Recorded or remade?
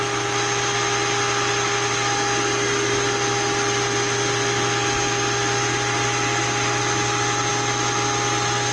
recorded